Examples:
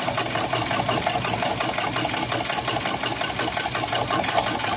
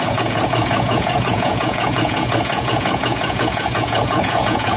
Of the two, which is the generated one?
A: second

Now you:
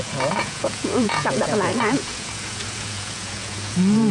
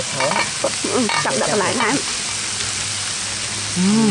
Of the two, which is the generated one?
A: first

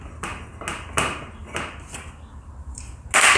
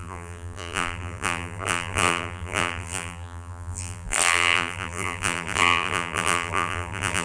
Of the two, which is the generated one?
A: second